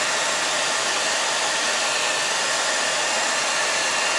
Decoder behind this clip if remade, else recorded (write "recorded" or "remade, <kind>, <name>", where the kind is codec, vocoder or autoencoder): recorded